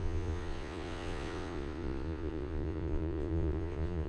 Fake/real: fake